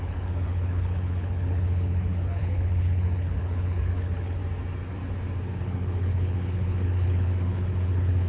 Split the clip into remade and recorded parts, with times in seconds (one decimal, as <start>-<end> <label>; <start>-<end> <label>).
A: 0.0-4.4 remade; 4.4-5.6 recorded; 5.6-8.3 remade